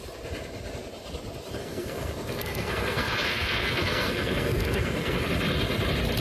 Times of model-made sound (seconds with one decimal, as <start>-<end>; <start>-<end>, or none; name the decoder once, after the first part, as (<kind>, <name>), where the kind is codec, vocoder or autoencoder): 1.6-5.3 (codec, SNAC)